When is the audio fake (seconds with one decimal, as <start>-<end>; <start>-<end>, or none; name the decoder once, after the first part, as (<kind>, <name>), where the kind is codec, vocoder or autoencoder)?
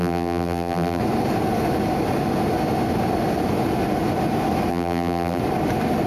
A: 0.0-1.0 (vocoder, BigVGAN v2); 4.7-5.4